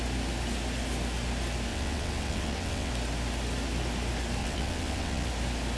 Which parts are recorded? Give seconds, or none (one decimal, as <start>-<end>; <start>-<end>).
0.0-1.7; 2.9-4.4; 5.3-5.8